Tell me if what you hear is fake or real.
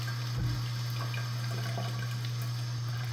real